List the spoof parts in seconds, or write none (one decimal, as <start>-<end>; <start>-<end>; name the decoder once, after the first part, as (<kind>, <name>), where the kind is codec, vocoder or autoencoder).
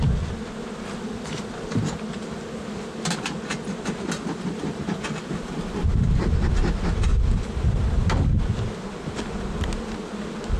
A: 3.5-4.8 (vocoder, BigVGAN v2); 7.1-9.4